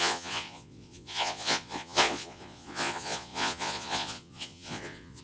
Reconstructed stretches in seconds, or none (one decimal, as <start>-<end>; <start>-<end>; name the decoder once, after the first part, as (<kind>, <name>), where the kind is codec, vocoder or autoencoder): 0.0-5.2 (vocoder, Vocos)